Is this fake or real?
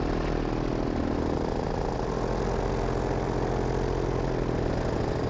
real